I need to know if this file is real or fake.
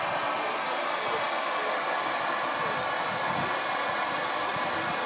real